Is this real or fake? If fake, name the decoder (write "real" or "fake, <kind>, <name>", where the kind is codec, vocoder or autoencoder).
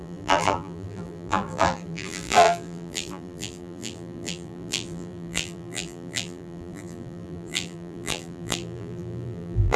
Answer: fake, vocoder, BigVGAN v2